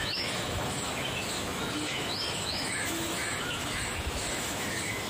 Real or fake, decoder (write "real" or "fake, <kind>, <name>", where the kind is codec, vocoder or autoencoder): fake, autoencoder, DAC-VAE